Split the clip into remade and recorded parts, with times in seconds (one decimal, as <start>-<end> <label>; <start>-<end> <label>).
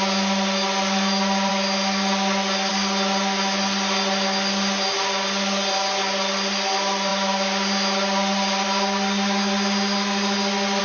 0.0-10.8 recorded